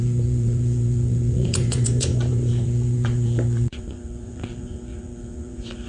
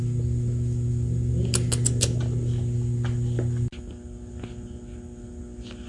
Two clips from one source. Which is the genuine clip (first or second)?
second